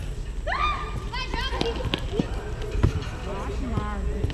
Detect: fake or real real